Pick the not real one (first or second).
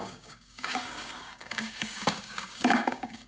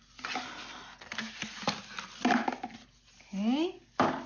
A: first